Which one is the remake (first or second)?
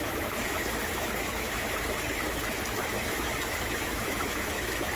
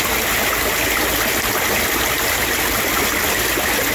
first